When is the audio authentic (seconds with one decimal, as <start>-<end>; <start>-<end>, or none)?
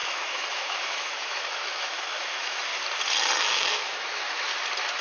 2.7-3.4; 4.5-5.0